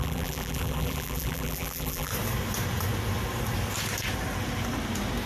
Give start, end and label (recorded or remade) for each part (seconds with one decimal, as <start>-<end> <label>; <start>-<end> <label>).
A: 0.0-2.1 remade; 2.1-5.3 recorded